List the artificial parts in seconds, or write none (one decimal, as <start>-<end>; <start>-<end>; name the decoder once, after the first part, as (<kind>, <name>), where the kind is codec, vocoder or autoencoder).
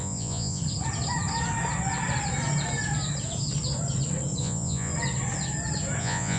0.0-0.6 (vocoder, Vocos); 4.4-4.9; 6.0-6.4